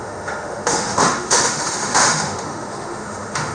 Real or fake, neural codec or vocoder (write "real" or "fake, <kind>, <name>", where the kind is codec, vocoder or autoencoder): fake, autoencoder, DAC-VAE